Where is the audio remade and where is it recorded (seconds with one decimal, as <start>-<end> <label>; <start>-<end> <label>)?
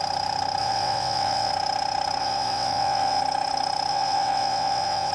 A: 0.0-0.6 recorded; 0.6-1.5 remade; 1.5-2.2 recorded; 2.2-3.2 remade; 3.2-3.9 recorded; 3.9-5.1 remade